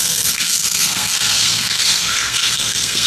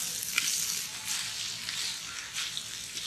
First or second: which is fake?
first